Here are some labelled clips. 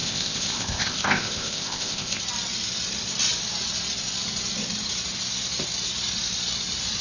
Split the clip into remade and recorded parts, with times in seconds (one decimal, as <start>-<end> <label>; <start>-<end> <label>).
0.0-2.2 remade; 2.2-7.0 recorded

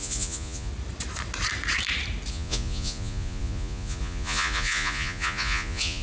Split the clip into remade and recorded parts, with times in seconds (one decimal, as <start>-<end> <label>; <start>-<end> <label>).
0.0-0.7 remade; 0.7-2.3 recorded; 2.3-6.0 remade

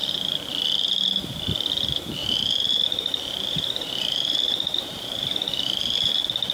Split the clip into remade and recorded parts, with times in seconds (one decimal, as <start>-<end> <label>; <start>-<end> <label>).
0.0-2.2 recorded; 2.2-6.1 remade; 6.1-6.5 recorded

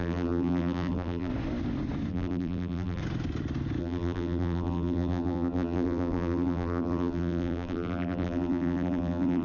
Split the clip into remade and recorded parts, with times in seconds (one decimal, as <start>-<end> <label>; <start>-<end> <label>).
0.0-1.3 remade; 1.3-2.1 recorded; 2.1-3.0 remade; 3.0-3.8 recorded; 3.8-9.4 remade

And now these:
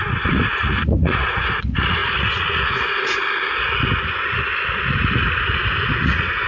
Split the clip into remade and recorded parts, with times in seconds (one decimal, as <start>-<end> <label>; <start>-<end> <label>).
0.0-3.2 remade; 3.2-4.1 recorded; 4.1-4.5 remade; 4.5-6.0 recorded; 6.0-6.5 remade